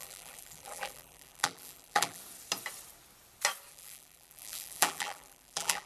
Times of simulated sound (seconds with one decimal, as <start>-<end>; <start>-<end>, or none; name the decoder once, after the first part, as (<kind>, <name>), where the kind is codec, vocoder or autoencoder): 0.0-2.2 (vocoder, BigVGAN v2); 3.7-5.9